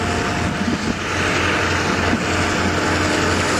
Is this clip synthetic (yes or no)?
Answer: no